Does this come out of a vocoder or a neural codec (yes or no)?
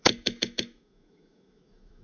yes